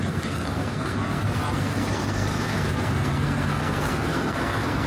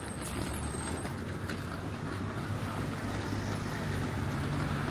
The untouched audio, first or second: second